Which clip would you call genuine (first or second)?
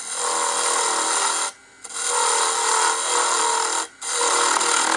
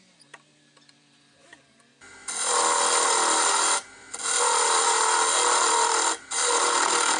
first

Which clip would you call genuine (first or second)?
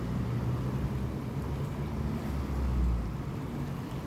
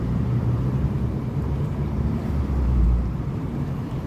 first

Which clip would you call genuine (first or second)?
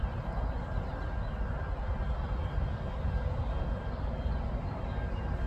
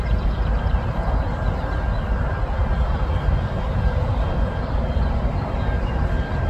first